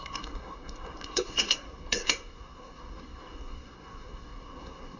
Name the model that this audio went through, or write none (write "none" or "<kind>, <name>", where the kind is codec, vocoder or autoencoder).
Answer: codec, SNAC